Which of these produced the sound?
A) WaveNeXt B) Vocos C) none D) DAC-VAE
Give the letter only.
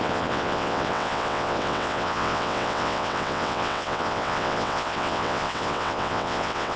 A